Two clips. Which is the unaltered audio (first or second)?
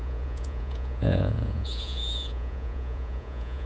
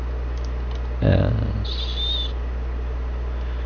second